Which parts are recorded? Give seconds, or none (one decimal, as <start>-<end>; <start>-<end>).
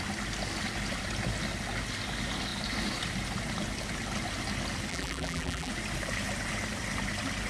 0.0-4.9; 5.7-7.5